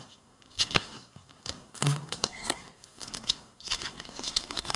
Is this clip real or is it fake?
fake